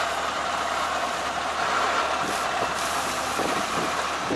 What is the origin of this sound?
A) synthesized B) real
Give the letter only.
A